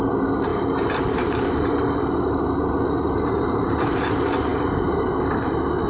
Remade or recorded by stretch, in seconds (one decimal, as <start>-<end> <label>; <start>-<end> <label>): 0.0-0.5 recorded; 0.5-4.0 remade; 4.0-5.9 recorded